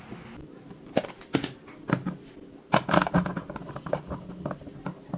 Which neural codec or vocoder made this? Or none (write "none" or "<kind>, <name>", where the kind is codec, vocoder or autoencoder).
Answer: none